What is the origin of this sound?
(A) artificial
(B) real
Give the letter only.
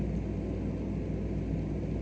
B